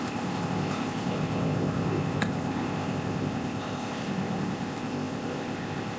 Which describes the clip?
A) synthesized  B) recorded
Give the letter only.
A